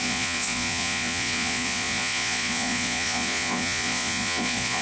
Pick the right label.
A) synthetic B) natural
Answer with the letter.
A